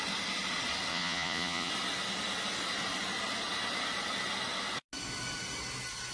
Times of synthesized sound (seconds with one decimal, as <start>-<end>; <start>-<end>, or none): 0.9-1.7